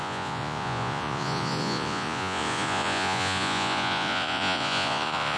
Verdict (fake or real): fake